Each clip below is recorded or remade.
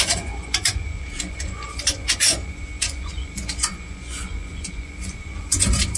remade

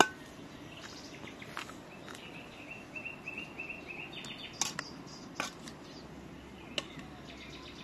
recorded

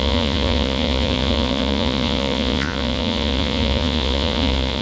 remade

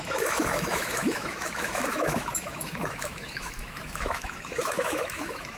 remade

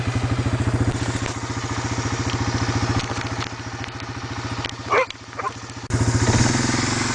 recorded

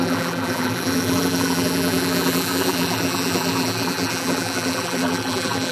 remade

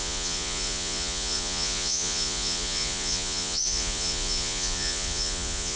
remade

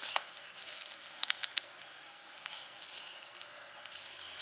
remade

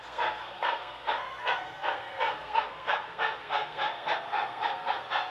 remade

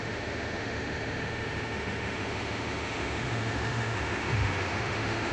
remade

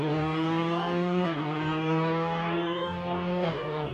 remade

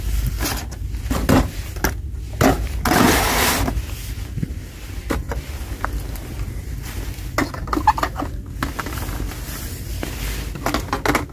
recorded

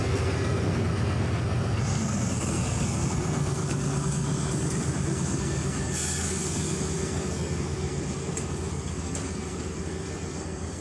remade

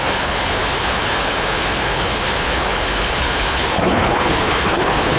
remade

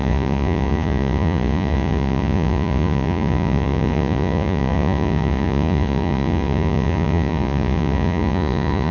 remade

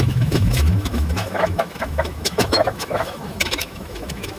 remade